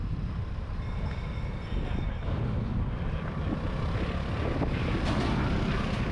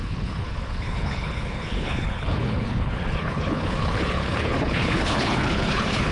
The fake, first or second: second